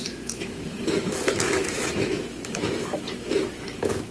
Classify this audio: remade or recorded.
remade